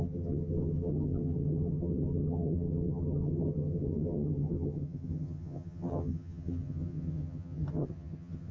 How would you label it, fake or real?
fake